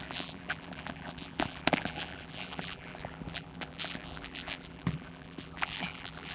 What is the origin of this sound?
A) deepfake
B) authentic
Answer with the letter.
A